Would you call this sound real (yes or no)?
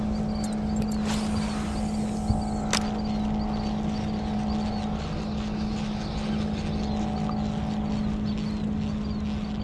yes